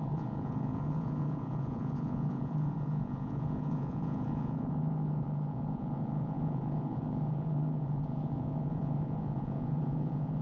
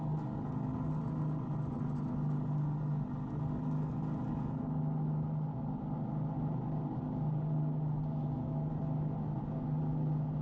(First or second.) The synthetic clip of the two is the first